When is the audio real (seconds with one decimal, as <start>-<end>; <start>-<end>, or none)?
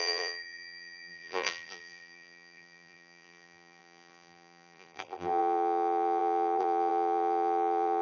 none